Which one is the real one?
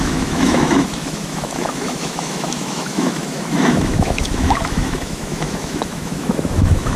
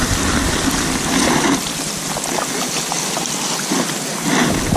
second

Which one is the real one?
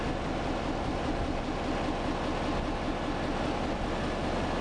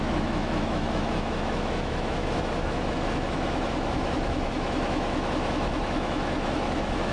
first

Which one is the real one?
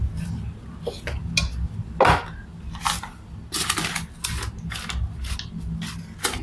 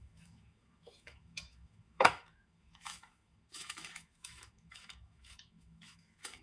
first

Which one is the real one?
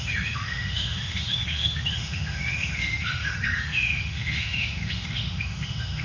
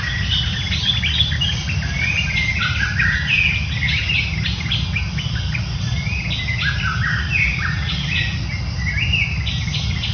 second